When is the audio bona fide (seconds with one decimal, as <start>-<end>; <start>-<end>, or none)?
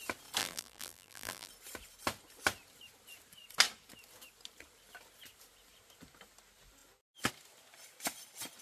0.0-0.4; 1.5-8.6